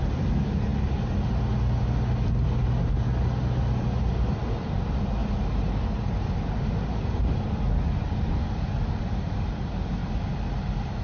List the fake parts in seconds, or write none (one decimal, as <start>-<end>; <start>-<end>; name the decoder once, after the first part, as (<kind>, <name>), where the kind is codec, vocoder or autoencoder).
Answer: 4.4-7.4 (vocoder, BigVGAN v2)